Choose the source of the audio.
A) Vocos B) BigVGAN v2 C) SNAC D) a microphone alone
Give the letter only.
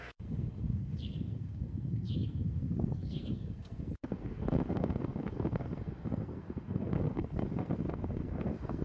C